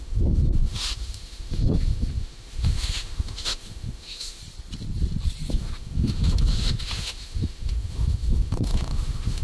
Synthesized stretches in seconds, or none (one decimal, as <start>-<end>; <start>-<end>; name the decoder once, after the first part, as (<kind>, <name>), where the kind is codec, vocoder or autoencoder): 0.0-4.4 (autoencoder, DAC-VAE); 5.5-9.4